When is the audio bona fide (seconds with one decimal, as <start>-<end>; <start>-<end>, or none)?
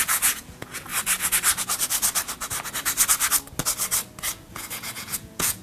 0.9-4.3